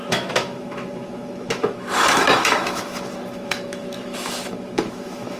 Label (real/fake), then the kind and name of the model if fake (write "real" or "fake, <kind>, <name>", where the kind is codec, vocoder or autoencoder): fake, autoencoder, DAC-VAE